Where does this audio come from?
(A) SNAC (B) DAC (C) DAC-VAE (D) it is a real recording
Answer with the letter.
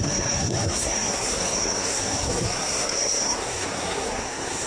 A